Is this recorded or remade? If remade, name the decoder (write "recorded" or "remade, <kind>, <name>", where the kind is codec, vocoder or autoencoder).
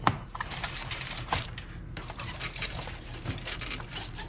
remade, vocoder, BigVGAN v2